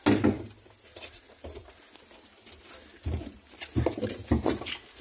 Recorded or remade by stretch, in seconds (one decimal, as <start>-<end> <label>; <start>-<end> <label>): 0.0-5.0 recorded